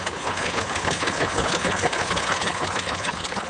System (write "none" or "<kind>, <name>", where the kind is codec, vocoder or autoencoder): codec, HILCodec